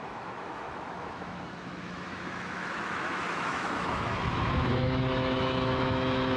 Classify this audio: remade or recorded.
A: remade